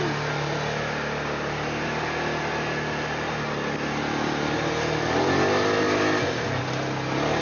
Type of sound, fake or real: real